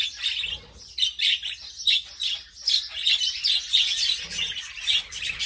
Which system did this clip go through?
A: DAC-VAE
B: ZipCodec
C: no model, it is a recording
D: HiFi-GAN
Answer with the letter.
C